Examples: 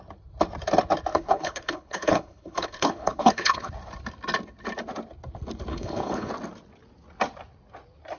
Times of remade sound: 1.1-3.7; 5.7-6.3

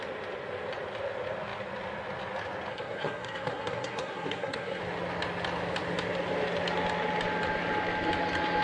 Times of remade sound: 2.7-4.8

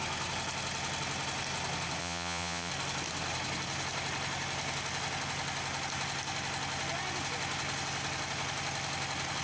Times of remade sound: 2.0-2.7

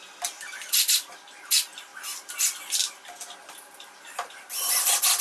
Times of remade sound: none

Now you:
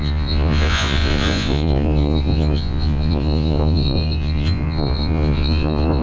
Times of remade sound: 0.0-6.0